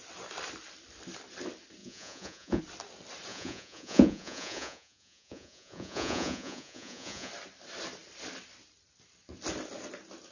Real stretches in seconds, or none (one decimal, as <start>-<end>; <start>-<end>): 0.0-1.8; 2.6-3.3; 7.3-10.3